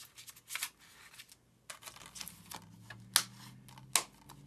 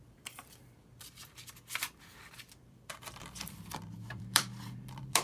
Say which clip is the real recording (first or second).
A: first